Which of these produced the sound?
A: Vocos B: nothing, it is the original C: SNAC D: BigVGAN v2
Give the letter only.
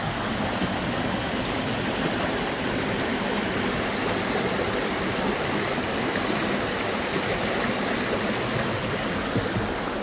B